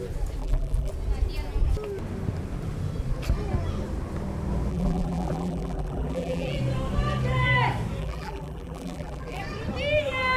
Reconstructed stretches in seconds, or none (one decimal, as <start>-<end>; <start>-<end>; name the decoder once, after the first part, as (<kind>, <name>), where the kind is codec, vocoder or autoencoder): 0.4-0.9 (vocoder, BigVGAN v2); 4.7-6.6; 8.0-9.4